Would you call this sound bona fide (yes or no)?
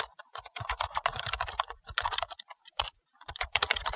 no